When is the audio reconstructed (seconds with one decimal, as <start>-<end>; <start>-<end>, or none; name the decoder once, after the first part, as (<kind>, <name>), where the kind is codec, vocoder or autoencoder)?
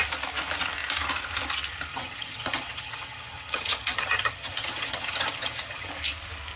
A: 1.9-5.9 (vocoder, HiFi-GAN)